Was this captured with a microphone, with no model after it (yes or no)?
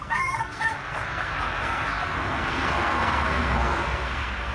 no